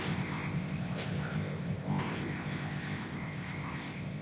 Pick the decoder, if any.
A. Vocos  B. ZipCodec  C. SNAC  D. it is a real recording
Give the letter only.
B